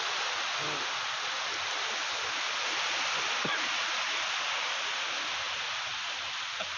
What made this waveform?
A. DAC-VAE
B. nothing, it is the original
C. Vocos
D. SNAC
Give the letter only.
B